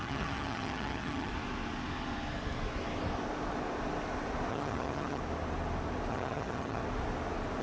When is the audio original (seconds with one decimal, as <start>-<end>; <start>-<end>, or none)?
1.3-4.5; 5.2-6.1; 6.8-7.6

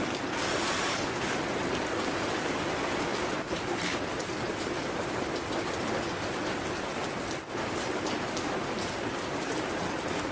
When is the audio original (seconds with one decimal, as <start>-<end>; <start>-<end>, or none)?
0.0-10.3

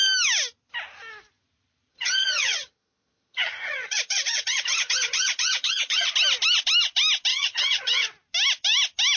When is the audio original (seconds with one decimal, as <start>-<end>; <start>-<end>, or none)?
0.0-1.9; 6.1-7.3; 8.1-9.2

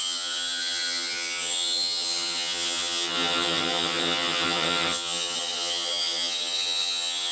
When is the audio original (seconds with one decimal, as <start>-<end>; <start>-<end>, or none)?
none

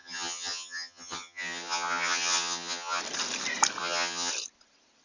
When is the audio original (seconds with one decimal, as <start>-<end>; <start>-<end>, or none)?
3.0-3.8; 4.3-5.0

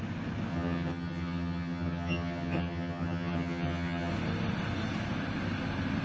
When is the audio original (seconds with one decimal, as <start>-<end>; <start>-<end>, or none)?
0.0-0.5; 4.1-6.0